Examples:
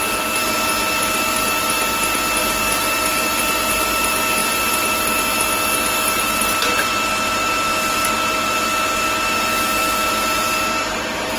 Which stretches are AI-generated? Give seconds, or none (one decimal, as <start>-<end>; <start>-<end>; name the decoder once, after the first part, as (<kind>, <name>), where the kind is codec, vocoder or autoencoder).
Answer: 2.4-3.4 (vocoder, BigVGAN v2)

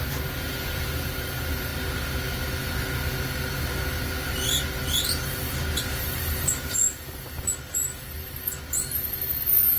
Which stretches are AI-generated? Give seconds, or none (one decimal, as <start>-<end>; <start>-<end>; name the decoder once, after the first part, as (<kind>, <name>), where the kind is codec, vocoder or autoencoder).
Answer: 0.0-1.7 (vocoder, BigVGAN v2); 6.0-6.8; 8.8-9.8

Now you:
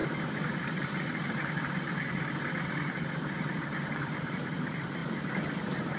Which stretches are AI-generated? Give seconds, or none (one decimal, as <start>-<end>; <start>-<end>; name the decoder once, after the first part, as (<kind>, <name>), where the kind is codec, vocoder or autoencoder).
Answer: 0.0-5.0 (vocoder, BigVGAN v2); 5.6-6.0

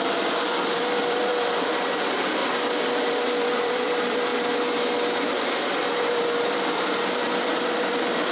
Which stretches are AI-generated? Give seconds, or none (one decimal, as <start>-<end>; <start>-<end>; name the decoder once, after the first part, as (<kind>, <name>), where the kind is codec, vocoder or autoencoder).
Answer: 0.0-2.4 (vocoder, BigVGAN v2); 3.1-4.3; 5.3-8.3

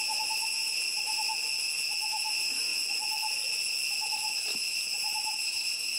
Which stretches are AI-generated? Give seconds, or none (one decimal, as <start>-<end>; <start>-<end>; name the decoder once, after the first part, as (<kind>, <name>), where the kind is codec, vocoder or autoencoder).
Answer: 0.0-1.3 (vocoder, BigVGAN v2); 2.3-2.7; 4.4-6.0

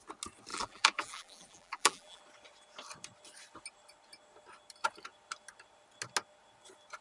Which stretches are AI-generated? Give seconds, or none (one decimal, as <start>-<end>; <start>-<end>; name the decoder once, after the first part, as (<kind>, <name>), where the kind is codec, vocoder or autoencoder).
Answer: 0.5-2.2 (vocoder, BigVGAN v2)